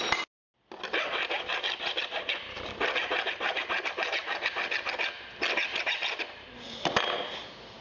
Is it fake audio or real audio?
real